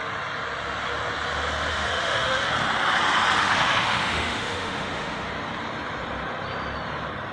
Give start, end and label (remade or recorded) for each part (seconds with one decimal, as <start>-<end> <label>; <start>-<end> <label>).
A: 0.0-1.7 recorded; 1.7-2.5 remade; 2.5-3.4 recorded; 3.4-5.3 remade; 5.3-7.3 recorded